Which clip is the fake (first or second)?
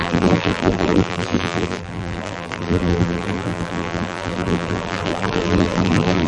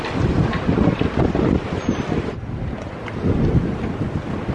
first